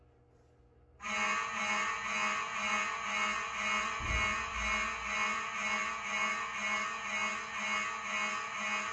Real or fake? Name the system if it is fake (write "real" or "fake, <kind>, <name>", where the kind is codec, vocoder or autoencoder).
real